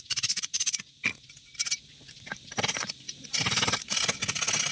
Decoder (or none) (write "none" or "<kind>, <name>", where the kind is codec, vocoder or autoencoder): none